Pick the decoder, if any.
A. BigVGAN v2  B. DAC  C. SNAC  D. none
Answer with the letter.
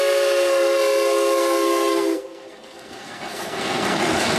C